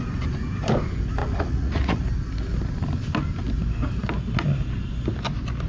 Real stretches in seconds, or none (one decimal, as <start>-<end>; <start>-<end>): 0.0-1.2; 2.0-5.7